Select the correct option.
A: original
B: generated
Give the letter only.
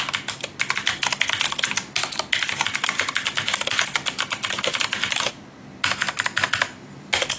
A